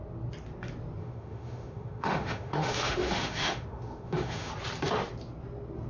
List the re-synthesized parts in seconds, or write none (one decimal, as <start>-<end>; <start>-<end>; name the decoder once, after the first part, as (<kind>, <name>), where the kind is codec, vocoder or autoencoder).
1.0-4.5 (autoencoder, DAC-VAE)